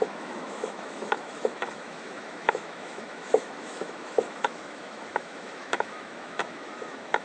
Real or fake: fake